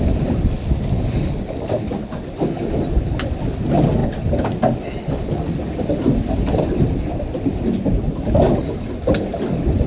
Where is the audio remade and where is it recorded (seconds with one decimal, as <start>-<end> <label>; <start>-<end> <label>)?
0.0-9.9 recorded